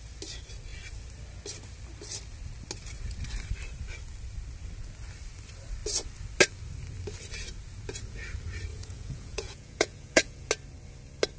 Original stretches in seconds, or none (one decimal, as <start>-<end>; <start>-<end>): 0.0-8.7; 10.5-11.4